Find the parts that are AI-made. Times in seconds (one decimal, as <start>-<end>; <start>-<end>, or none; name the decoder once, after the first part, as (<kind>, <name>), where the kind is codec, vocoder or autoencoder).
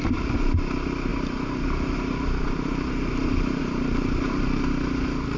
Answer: 1.1-3.6 (vocoder, BigVGAN v2)